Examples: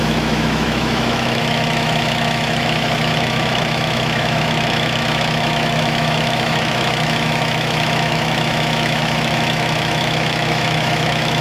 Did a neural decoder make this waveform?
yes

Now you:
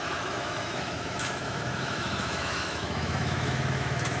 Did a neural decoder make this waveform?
yes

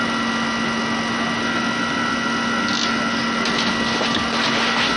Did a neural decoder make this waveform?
no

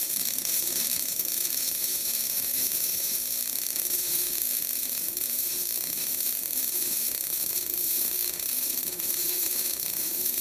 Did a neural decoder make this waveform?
yes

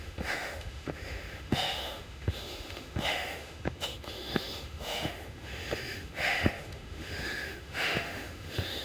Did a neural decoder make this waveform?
yes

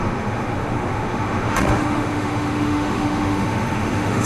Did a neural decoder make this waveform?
yes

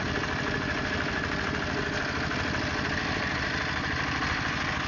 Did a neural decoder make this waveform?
no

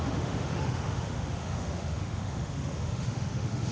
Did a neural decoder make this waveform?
yes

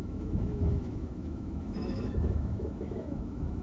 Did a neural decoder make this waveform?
yes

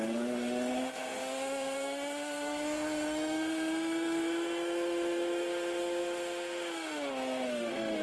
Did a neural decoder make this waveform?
yes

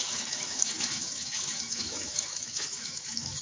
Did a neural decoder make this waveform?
yes